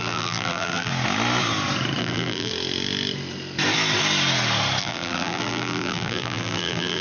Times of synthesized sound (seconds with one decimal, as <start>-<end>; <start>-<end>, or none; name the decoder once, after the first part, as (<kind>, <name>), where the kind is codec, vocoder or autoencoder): 0.0-0.9 (vocoder, BigVGAN v2); 2.0-2.5; 4.8-7.0